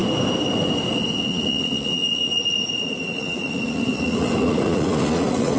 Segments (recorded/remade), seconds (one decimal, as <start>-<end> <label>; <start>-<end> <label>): 0.0-1.2 recorded; 1.2-5.6 remade